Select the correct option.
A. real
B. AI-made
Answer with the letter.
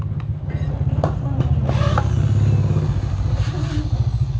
A